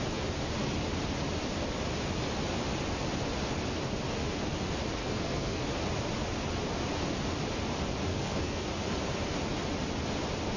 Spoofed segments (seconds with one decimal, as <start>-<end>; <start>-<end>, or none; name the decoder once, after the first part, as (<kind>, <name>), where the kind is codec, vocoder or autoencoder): 5.0-5.6 (codec, SNAC); 8.1-8.7

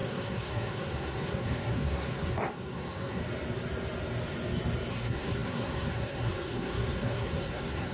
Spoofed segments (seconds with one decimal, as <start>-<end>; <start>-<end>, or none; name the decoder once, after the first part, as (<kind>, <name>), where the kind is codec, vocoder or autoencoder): 0.0-3.2 (codec, SNAC); 4.9-7.9